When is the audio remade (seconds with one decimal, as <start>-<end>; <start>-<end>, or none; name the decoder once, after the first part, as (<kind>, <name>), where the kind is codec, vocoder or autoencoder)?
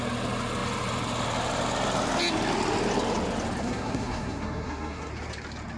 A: 3.6-5.1 (codec, SNAC)